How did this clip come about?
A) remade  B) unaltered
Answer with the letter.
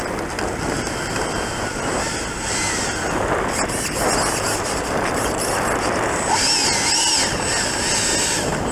B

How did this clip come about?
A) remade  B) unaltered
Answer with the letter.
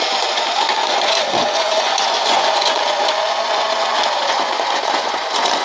A